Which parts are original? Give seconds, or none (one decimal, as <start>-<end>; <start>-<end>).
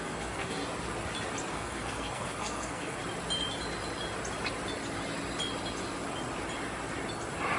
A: 0.6-1.5; 3.0-7.6